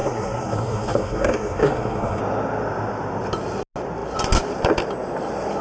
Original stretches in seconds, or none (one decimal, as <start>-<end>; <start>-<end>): 2.2-5.6